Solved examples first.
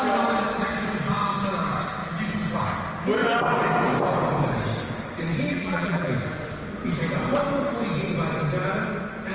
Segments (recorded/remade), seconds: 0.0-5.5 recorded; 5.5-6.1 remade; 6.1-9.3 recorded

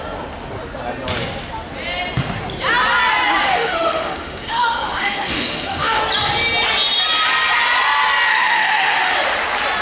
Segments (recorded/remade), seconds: 0.0-3.5 recorded; 3.5-6.0 remade; 6.0-8.3 recorded; 8.3-9.1 remade; 9.1-9.8 recorded

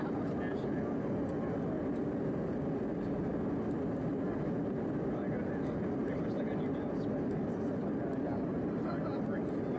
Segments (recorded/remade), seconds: 0.0-9.8 recorded